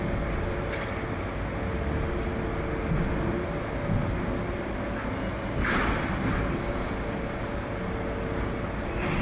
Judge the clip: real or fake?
real